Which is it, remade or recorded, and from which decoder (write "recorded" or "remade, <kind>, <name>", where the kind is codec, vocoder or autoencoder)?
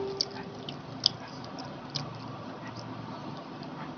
recorded